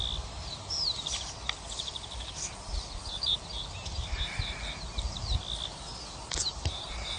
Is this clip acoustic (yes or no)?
yes